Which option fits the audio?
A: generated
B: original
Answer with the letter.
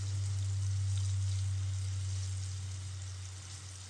B